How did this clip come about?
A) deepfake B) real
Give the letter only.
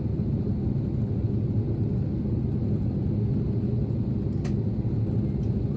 B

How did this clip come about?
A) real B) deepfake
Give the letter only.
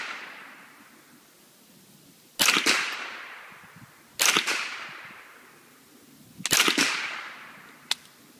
A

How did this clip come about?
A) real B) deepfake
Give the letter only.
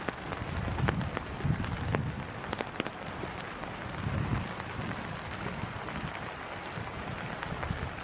B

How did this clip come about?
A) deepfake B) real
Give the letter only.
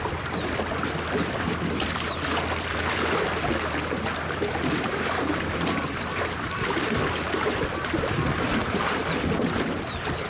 A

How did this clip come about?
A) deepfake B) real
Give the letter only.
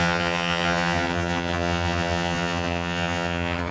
A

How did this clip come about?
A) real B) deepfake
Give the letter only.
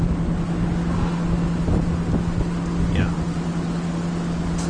A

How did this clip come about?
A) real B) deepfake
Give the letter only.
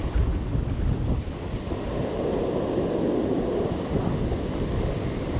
A